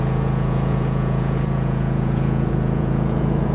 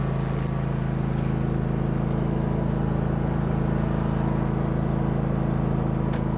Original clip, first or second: second